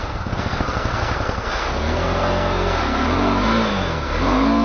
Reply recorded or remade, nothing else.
remade